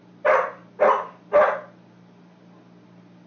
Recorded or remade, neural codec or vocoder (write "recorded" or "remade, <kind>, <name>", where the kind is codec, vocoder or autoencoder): recorded